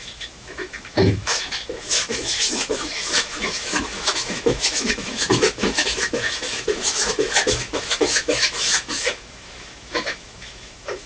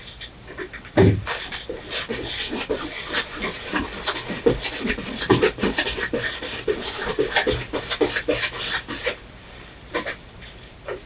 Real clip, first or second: second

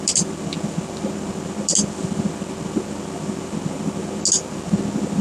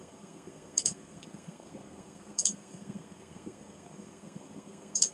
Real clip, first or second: first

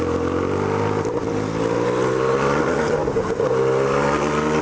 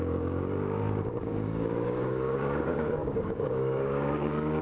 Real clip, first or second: first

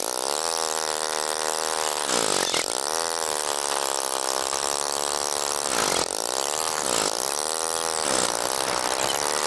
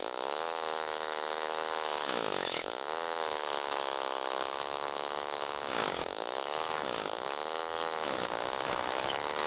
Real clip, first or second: first